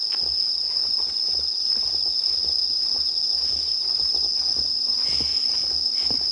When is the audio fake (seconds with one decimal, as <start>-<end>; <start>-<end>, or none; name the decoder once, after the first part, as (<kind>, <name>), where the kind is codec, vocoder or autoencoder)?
0.0-0.8 (vocoder, BigVGAN v2); 1.6-2.6; 3.5-4.3; 4.9-6.3